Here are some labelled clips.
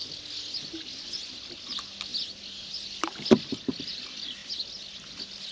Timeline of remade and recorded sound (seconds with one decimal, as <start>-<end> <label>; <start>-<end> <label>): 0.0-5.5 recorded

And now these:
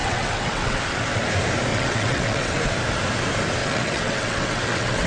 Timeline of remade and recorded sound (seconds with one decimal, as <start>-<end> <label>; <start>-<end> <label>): 0.0-0.8 remade; 0.8-1.7 recorded; 1.7-2.6 remade; 2.6-3.6 recorded; 3.6-5.1 remade

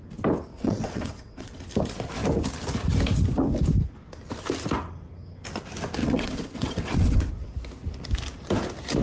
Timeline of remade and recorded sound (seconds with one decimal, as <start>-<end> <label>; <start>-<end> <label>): 0.0-0.5 recorded; 0.5-1.6 remade; 1.6-6.0 recorded; 6.0-7.3 remade; 7.3-9.0 recorded

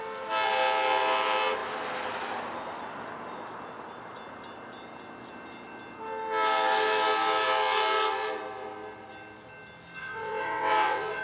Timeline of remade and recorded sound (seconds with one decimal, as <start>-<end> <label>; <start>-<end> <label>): 0.0-10.0 recorded; 10.0-11.2 remade

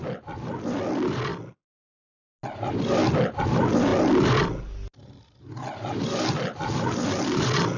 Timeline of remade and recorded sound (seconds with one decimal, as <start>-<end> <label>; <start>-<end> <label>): 0.0-7.8 recorded